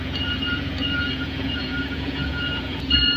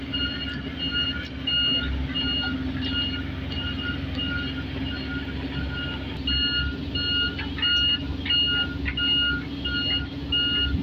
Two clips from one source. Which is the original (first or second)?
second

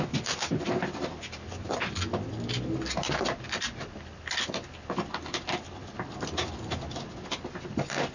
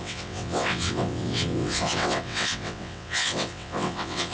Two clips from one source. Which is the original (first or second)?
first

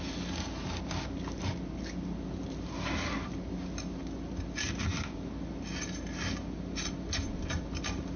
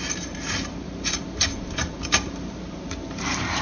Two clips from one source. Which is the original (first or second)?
first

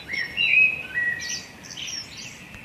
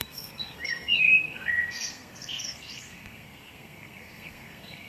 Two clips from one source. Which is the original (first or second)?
first